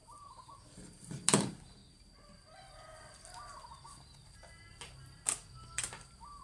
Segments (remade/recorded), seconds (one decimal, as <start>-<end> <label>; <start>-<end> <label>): 0.0-6.4 recorded